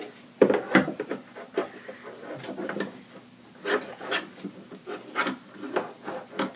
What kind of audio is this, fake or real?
real